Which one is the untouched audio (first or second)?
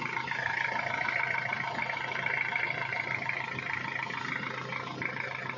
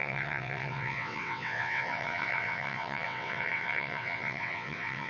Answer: first